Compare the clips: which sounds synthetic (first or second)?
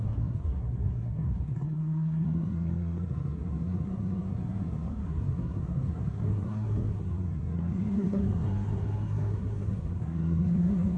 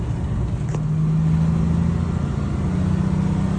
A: first